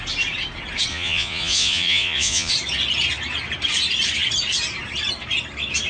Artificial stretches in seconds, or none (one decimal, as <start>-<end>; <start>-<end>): 0.9-2.5